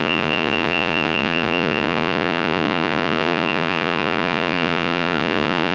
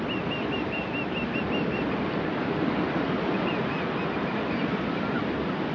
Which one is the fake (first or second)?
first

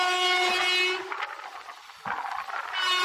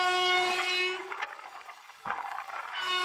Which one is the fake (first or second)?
second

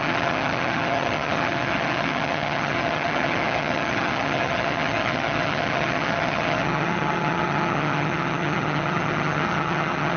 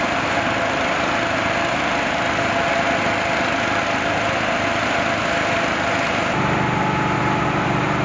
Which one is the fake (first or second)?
first